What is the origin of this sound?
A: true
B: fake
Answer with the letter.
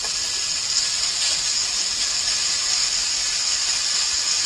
A